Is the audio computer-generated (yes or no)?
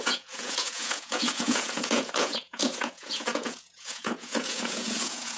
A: yes